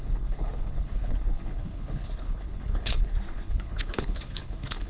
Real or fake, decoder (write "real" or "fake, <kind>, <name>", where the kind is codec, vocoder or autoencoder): fake, codec, HILCodec